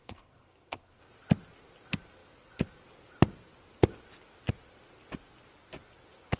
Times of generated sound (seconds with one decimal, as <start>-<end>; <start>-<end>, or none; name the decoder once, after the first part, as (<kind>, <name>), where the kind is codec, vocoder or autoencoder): 0.0-1.0 (codec, SNAC)